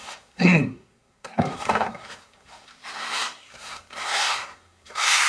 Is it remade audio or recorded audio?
remade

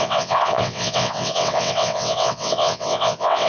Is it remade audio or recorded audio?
remade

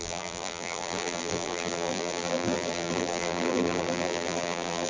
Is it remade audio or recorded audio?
remade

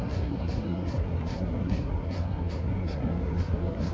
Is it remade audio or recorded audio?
remade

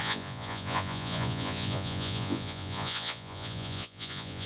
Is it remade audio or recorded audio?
remade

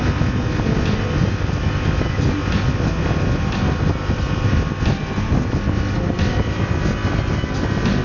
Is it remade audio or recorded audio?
recorded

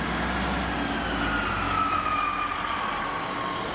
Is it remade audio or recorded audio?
recorded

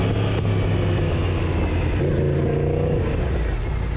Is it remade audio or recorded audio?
recorded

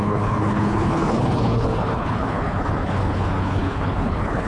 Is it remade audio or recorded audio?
remade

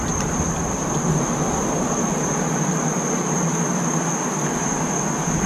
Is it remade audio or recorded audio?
recorded